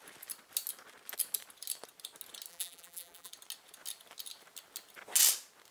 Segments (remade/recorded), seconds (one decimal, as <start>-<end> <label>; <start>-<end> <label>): 0.0-2.5 recorded; 2.5-3.3 remade; 3.3-5.7 recorded